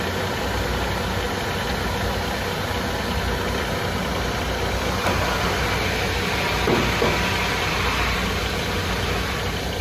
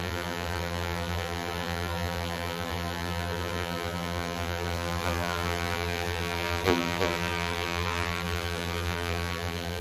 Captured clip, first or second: first